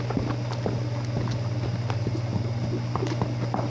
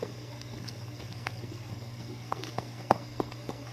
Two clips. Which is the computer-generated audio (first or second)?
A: second